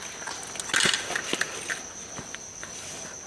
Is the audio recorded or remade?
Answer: recorded